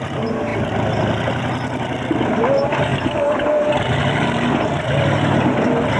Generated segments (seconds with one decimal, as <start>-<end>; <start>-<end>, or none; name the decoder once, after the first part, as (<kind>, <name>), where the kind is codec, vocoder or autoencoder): none